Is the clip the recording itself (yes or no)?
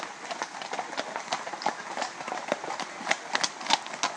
yes